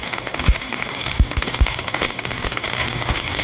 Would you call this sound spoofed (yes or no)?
yes